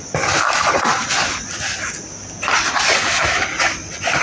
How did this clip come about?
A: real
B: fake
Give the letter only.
A